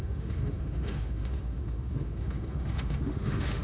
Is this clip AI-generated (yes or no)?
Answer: yes